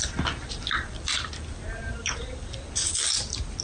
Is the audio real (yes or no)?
yes